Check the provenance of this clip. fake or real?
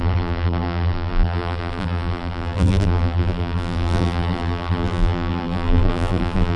fake